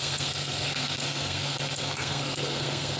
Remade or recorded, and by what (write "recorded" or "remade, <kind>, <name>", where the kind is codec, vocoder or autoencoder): remade, codec, SNAC